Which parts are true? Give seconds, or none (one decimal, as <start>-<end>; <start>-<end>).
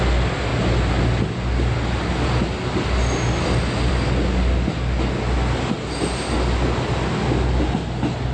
0.0-8.3